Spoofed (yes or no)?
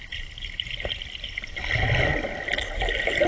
no